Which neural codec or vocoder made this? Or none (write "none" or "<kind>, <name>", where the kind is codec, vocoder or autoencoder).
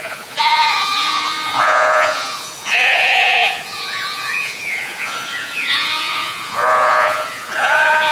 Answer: vocoder, Vocos